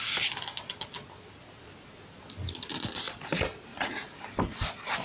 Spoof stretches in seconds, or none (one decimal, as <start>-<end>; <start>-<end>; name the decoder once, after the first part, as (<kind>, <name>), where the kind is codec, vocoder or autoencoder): 3.7-4.2 (vocoder, Vocos)